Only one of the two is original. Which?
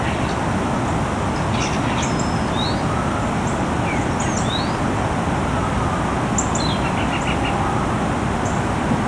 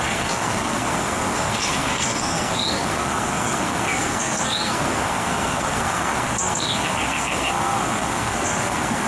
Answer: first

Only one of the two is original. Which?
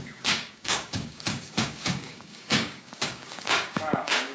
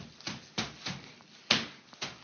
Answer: second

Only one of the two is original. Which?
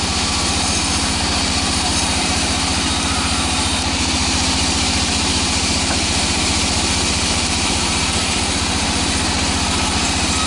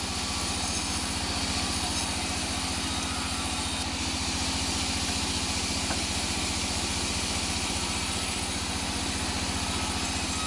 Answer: second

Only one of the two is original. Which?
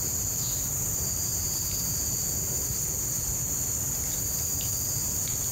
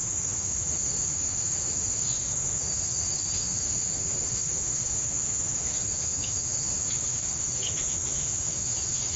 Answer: first